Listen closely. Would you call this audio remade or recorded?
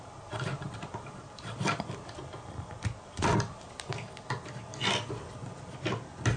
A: recorded